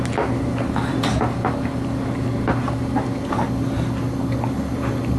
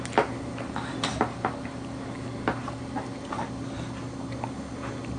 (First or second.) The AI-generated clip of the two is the second